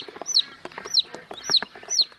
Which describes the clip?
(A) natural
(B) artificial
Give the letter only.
B